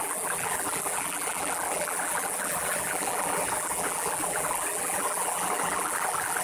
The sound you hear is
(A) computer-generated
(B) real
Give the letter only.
A